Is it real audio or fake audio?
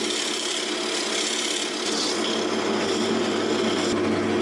real